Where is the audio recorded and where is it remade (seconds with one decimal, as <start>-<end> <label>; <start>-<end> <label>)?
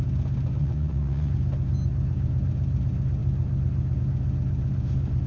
0.0-0.6 recorded; 0.6-1.3 remade; 1.3-5.3 recorded